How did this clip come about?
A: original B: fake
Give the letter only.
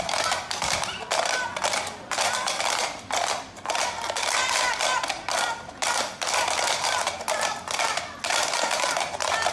A